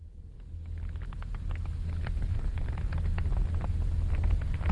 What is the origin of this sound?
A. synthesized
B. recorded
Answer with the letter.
B